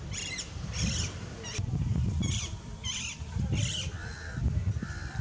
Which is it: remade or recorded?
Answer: remade